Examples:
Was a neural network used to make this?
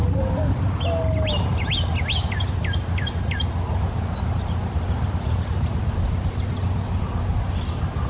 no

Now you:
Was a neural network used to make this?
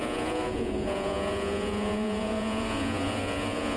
yes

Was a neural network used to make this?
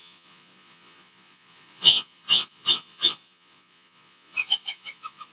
yes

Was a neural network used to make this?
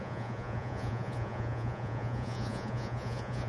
yes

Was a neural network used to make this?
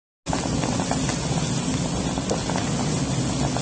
no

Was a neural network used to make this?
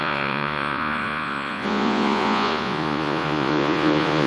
yes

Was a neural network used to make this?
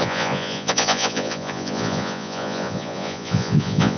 yes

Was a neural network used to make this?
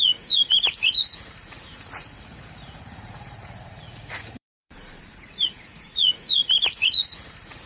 yes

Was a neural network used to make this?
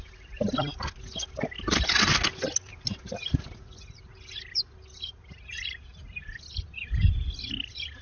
no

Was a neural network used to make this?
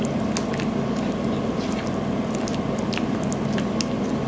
no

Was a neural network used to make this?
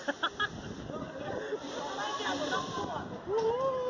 no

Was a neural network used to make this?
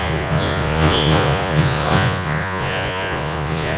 yes